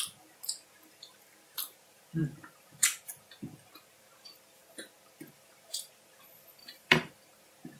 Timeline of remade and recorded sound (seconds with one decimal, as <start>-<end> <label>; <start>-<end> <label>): 0.0-6.6 recorded; 6.6-7.1 remade; 7.1-7.8 recorded